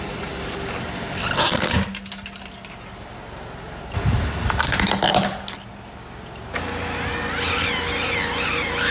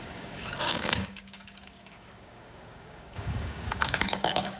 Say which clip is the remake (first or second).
second